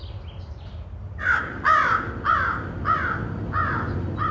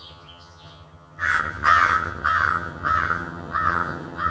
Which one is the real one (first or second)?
first